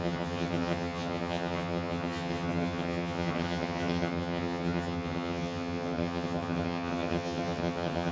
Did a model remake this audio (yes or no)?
yes